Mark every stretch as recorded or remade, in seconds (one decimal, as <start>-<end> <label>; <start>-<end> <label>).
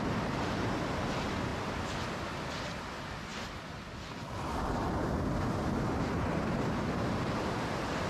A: 0.0-8.1 recorded